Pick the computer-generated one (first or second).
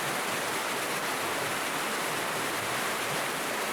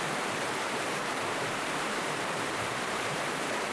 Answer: second